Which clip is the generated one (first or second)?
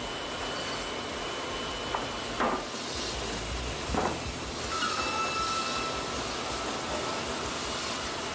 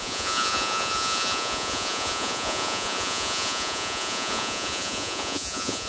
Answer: second